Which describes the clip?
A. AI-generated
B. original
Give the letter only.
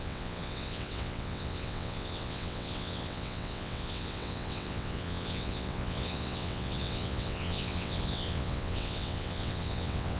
A